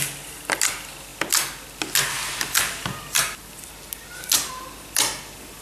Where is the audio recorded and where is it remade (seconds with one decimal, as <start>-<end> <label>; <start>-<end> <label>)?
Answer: 0.0-5.6 recorded